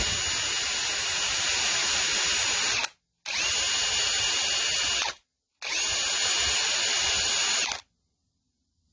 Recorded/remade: recorded